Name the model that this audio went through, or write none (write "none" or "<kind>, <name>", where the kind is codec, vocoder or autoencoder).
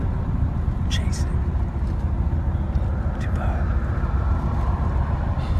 none